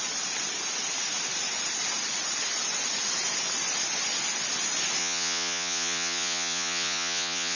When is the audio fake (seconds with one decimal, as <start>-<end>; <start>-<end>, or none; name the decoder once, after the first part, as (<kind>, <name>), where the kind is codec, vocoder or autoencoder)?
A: 5.0-7.6 (vocoder, Vocos)